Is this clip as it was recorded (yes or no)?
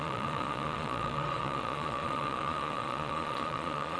no